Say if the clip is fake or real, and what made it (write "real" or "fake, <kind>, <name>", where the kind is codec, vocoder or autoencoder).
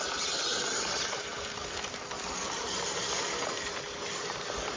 real